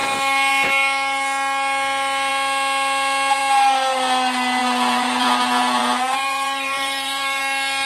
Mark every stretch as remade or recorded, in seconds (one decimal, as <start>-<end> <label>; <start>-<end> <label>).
0.0-4.6 recorded; 4.6-7.4 remade; 7.4-7.9 recorded